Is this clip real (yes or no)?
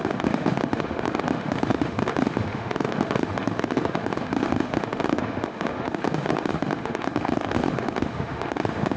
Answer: no